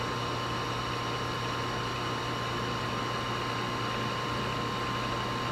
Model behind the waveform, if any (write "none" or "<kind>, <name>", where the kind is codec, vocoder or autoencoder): none